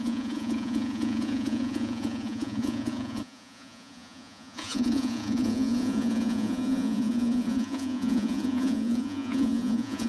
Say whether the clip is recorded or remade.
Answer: remade